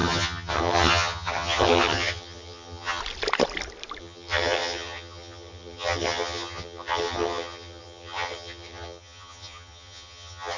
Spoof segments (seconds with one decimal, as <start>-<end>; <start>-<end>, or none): 0.0-3.0; 4.0-10.6